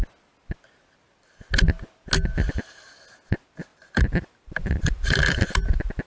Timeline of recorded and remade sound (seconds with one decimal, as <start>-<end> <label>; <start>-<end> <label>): 0.0-3.7 recorded; 3.7-6.1 remade